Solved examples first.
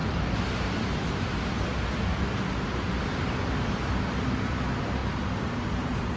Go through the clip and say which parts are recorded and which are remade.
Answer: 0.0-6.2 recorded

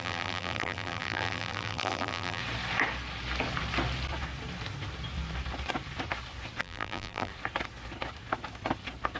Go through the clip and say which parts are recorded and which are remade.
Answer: 0.0-2.4 remade; 2.4-6.6 recorded; 6.6-7.3 remade; 7.3-9.2 recorded

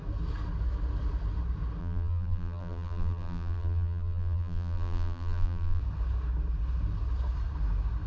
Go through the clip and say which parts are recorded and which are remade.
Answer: 0.0-1.8 recorded; 1.8-5.8 remade; 5.8-8.1 recorded

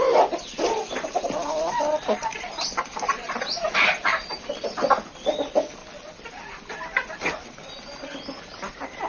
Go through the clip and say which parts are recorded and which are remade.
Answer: 0.0-2.3 recorded; 2.3-4.9 remade; 4.9-9.1 recorded

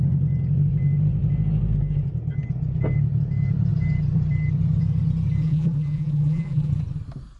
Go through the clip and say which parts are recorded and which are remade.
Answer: 0.0-5.4 recorded; 5.4-6.7 remade; 6.7-7.4 recorded

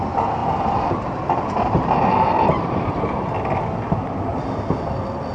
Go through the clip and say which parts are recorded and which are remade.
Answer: 0.0-4.3 remade; 4.3-5.3 recorded

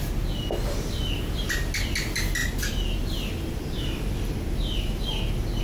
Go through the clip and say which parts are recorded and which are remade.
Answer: 0.0-2.4 recorded; 2.4-5.6 remade